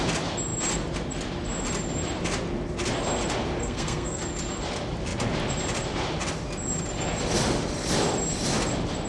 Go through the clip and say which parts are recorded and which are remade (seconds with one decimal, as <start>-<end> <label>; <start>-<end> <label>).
0.0-3.6 recorded; 3.6-4.2 remade; 4.2-9.1 recorded